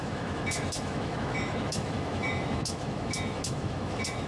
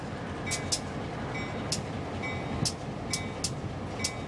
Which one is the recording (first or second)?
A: second